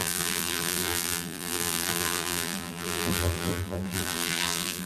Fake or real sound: fake